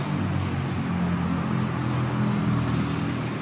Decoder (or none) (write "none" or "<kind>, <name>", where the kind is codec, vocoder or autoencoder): none